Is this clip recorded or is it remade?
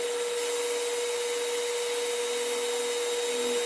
recorded